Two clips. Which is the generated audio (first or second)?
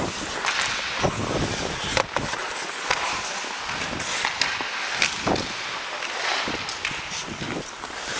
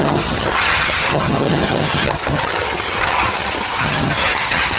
second